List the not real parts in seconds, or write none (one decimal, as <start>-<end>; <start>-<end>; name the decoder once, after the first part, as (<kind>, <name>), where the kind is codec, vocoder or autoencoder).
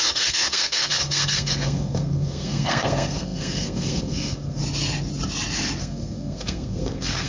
0.0-4.6 (codec, SNAC); 5.8-7.3